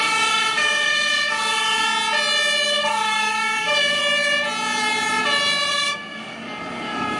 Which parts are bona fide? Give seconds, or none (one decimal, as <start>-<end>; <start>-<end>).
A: 1.9-2.7; 4.0-5.7